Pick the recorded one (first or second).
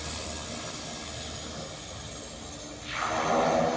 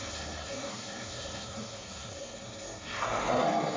first